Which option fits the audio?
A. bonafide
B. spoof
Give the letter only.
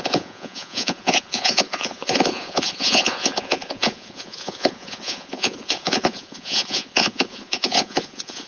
B